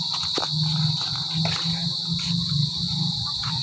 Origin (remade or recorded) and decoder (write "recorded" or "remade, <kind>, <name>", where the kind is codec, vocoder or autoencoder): recorded